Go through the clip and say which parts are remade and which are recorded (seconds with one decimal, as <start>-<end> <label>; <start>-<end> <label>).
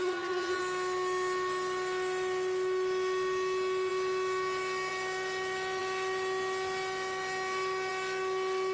0.0-0.6 remade; 0.6-8.7 recorded